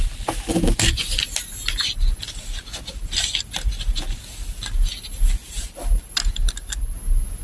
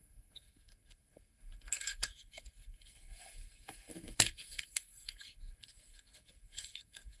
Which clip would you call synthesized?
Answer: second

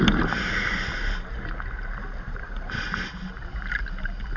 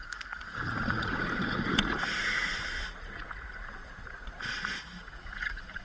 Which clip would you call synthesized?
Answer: second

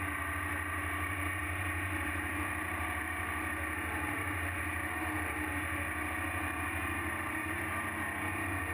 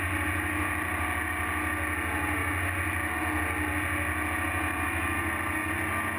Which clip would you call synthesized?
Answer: first